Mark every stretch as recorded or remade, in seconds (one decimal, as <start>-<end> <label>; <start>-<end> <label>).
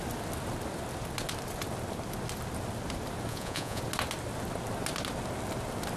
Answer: 0.0-3.3 recorded; 3.3-3.8 remade; 3.8-6.0 recorded